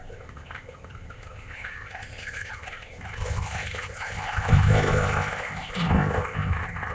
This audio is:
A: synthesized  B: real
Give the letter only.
A